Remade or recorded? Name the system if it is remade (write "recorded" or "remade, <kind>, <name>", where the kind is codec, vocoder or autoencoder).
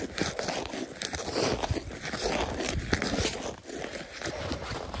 recorded